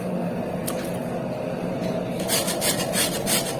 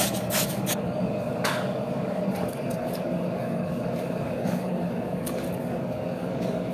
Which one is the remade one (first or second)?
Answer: second